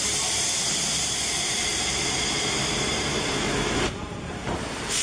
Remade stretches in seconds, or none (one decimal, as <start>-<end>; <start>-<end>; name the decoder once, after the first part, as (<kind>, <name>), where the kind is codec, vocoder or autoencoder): 1.7-4.5 (vocoder, BigVGAN v2)